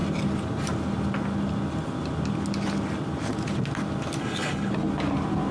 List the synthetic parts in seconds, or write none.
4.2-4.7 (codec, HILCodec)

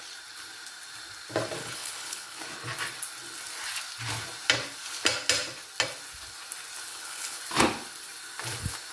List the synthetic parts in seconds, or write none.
1.6-2.4 (codec, HILCodec); 6.9-7.4

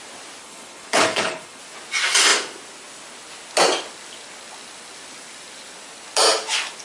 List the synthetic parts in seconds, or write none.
0.4-1.6 (codec, HILCodec)

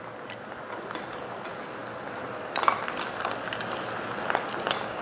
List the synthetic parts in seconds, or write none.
none